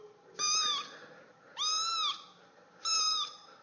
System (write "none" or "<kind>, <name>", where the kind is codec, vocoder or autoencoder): none